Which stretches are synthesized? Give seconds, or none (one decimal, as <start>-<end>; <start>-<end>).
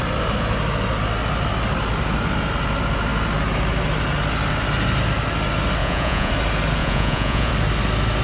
5.8-6.3; 6.8-7.5